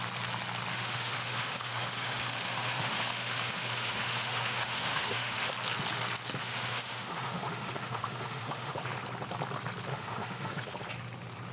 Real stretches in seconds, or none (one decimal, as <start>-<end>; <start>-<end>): 0.0-0.7; 5.5-6.4; 8.8-9.9; 10.6-11.5